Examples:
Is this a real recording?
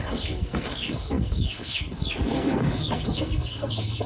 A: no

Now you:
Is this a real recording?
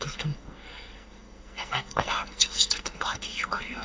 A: no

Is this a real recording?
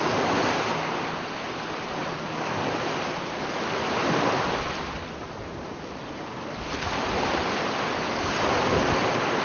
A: yes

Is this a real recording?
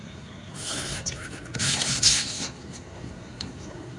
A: no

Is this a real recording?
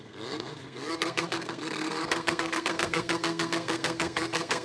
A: no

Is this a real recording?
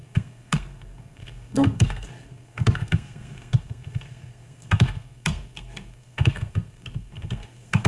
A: no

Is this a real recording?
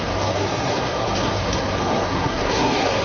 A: no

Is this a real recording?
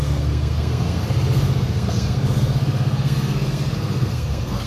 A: no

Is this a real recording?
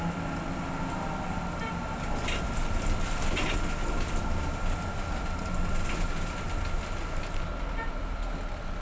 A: yes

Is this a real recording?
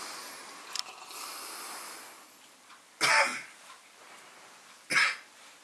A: yes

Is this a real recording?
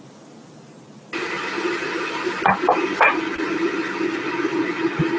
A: yes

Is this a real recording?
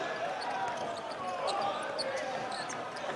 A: yes